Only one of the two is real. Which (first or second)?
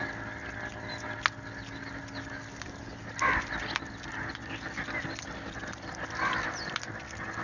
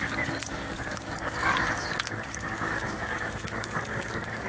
first